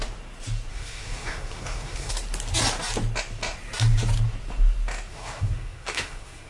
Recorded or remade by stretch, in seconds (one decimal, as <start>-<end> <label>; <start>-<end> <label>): 0.0-0.7 recorded; 0.7-2.1 remade; 2.1-5.1 recorded; 5.1-6.5 remade